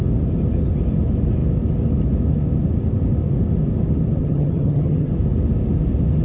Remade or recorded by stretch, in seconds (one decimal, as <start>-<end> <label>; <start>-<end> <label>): 0.0-4.2 recorded; 4.2-5.1 remade; 5.1-6.2 recorded